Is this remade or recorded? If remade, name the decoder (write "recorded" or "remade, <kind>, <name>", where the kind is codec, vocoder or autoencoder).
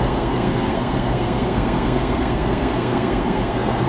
remade, codec, SNAC